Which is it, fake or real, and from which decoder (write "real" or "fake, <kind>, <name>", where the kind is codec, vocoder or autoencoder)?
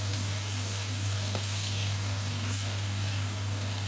fake, codec, DAC